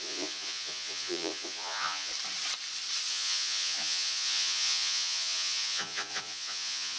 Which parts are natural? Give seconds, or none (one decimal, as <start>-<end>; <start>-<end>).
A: 2.1-3.1